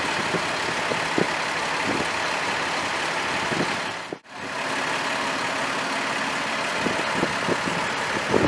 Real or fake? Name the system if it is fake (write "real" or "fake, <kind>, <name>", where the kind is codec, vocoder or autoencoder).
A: real